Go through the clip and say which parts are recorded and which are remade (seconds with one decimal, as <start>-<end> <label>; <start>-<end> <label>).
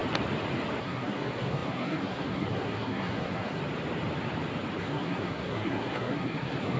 0.0-0.8 recorded; 0.8-3.6 remade; 3.6-4.8 recorded; 4.8-6.8 remade